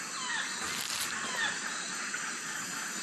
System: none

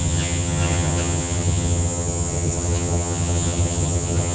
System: vocoder, HiFi-GAN